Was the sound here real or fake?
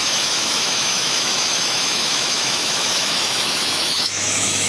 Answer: fake